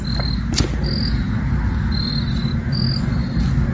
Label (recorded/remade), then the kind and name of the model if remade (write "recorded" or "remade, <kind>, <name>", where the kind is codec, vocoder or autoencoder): recorded